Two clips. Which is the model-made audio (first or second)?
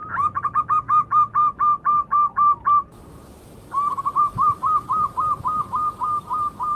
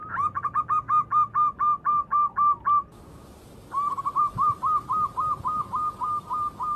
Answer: first